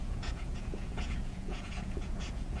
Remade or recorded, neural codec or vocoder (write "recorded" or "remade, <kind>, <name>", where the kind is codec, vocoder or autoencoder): remade, vocoder, Vocos